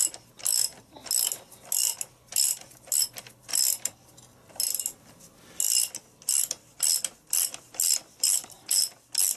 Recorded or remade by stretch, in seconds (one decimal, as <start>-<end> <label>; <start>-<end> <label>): 0.0-9.4 recorded